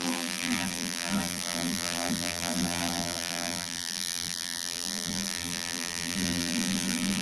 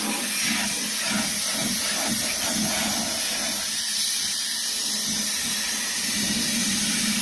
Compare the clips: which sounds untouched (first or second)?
second